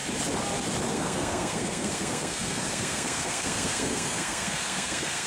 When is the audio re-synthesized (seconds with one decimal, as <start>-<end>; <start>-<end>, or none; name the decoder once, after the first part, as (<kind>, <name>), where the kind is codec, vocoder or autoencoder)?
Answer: 0.9-5.3 (codec, SNAC)